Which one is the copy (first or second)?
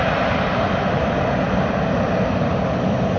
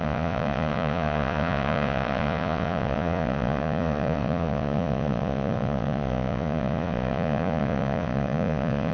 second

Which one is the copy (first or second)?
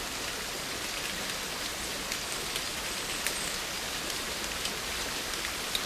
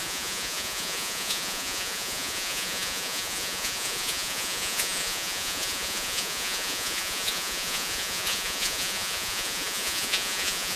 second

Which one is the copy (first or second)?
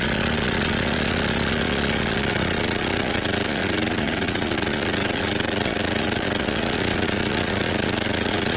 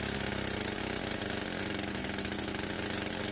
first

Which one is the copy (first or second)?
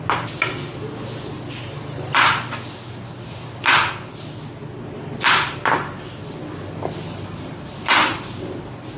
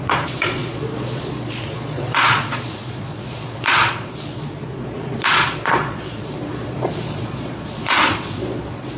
second